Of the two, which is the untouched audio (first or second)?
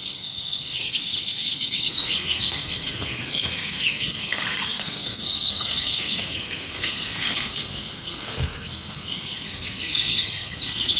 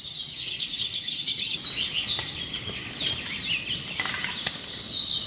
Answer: second